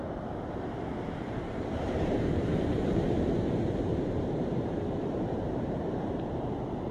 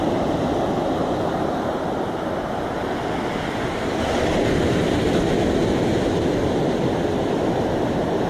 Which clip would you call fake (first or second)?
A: first